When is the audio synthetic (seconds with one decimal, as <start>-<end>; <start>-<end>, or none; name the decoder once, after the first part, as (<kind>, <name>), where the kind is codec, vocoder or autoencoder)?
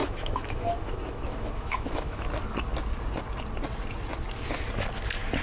0.0-2.3 (autoencoder, DAC-VAE)